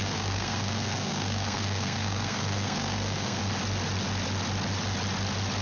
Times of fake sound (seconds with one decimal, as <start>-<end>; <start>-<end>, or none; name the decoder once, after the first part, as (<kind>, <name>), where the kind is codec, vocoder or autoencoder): 0.0-3.4 (codec, SNAC)